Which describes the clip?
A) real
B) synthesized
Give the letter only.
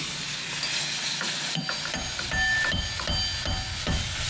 A